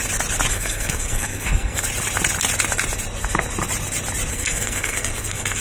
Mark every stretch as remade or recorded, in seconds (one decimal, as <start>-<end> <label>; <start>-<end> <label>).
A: 0.0-0.5 recorded; 0.5-1.8 remade; 1.8-4.3 recorded; 4.3-5.6 remade